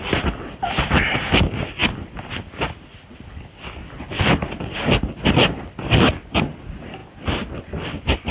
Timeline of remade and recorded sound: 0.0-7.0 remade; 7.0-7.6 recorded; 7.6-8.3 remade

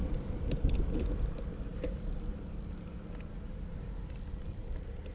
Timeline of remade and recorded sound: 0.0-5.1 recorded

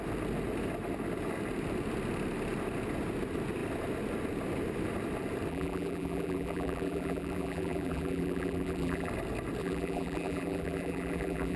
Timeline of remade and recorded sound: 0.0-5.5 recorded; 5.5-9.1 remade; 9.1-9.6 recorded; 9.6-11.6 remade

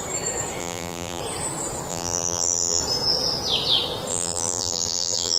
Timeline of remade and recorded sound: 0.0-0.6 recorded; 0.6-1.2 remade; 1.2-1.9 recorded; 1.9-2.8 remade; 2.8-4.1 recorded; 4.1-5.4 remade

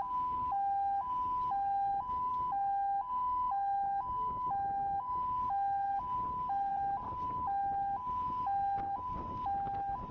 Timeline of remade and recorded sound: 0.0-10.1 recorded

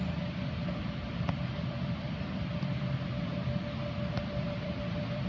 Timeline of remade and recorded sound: 0.0-3.3 remade; 3.3-4.1 recorded; 4.1-5.3 remade

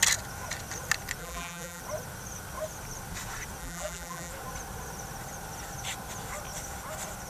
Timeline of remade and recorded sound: 0.0-1.2 recorded; 1.2-1.8 remade; 1.8-3.6 recorded; 3.6-4.3 remade; 4.3-7.3 recorded

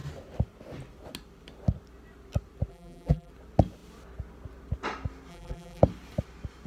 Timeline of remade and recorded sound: 0.0-2.7 recorded; 2.7-3.3 remade; 3.3-5.3 recorded; 5.3-5.8 remade; 5.8-6.7 recorded